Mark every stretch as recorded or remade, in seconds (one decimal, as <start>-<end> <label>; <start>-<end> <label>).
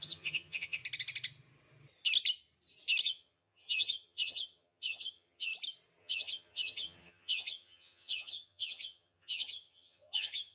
0.0-0.8 remade; 0.8-3.0 recorded; 3.0-5.5 remade; 5.5-6.0 recorded; 6.0-10.5 remade